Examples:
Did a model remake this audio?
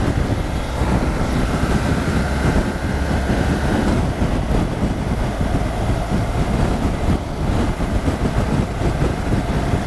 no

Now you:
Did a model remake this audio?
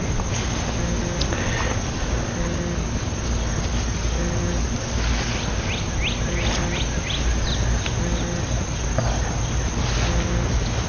no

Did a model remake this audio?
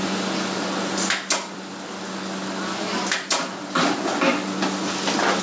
no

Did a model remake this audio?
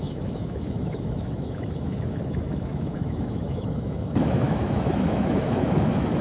yes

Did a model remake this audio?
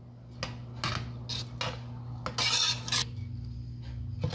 no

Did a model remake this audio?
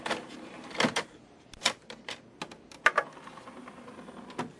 no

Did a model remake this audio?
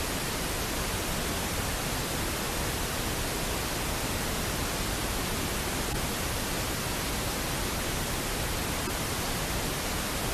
no